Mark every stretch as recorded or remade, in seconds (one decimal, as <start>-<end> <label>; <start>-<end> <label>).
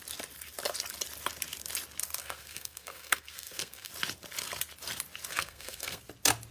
0.0-2.2 recorded; 2.2-3.9 remade; 3.9-5.3 recorded; 5.3-6.0 remade; 6.0-6.5 recorded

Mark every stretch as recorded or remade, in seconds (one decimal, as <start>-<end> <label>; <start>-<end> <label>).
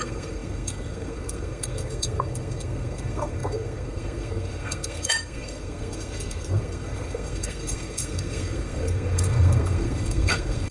0.0-10.7 remade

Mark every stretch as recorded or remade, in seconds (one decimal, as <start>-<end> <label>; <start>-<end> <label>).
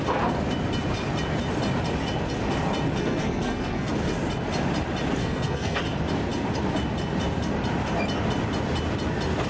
0.0-3.0 recorded; 3.0-3.9 remade; 3.9-5.2 recorded; 5.2-5.8 remade; 5.8-9.5 recorded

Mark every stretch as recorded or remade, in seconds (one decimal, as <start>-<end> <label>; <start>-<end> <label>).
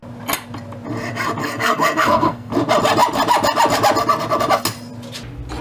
0.0-1.4 recorded; 1.4-2.5 remade; 2.5-5.6 recorded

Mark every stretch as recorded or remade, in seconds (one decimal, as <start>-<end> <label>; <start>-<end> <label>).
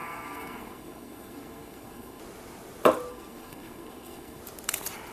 0.0-2.2 remade; 2.2-3.1 recorded; 3.1-4.4 remade; 4.4-5.1 recorded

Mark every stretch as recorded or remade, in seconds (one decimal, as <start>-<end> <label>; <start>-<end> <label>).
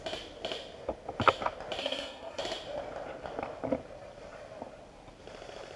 0.0-1.8 recorded; 1.8-2.4 remade; 2.4-5.8 recorded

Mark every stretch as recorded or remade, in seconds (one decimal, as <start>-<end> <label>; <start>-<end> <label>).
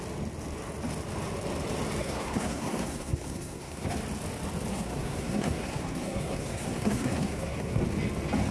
0.0-2.0 recorded; 2.0-3.9 remade; 3.9-4.7 recorded; 4.7-7.8 remade; 7.8-8.5 recorded